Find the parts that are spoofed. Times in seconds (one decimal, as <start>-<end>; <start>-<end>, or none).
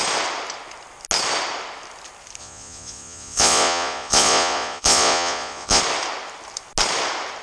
2.4-5.8